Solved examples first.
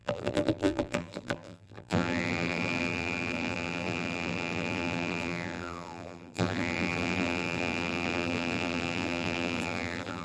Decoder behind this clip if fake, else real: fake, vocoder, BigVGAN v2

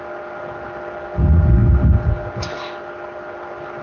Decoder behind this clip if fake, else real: real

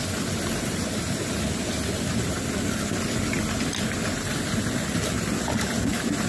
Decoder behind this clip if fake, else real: real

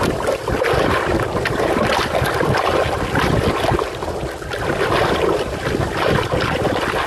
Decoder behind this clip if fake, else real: real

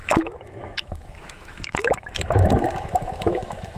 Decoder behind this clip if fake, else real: fake, autoencoder, DAC-VAE